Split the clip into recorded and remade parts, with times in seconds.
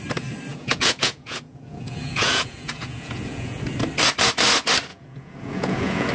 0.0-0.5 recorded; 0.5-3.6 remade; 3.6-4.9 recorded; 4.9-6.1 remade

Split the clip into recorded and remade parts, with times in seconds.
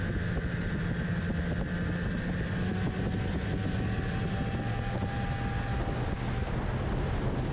0.0-7.5 recorded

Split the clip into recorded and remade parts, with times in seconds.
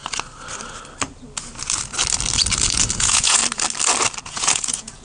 0.0-3.0 recorded; 3.0-3.4 remade; 3.4-4.2 recorded; 4.2-5.0 remade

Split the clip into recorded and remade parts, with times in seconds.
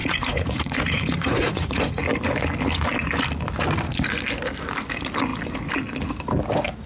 0.0-2.0 remade; 2.0-6.9 recorded